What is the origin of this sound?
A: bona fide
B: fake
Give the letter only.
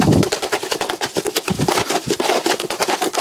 A